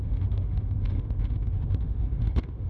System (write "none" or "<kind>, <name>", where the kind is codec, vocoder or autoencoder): autoencoder, DAC-VAE